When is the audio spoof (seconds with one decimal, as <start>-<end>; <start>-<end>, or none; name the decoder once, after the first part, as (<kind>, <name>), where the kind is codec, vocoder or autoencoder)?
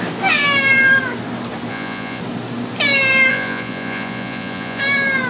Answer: 1.7-2.2 (vocoder, Vocos); 3.3-4.8